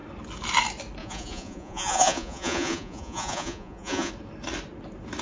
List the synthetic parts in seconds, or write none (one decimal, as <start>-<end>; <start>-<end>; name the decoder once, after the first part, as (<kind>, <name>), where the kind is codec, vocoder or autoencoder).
1.0-4.1 (vocoder, Vocos)